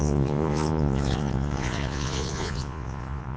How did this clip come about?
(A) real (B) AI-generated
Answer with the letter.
B